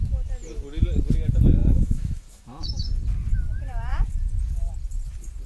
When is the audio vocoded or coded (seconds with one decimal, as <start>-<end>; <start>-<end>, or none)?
1.6-2.9